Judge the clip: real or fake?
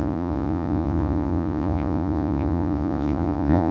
fake